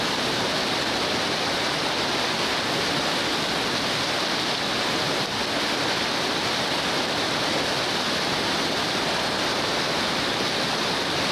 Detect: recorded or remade recorded